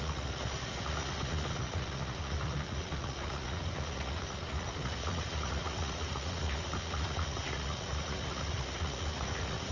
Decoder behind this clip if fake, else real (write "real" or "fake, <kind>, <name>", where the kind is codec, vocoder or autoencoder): fake, vocoder, Vocos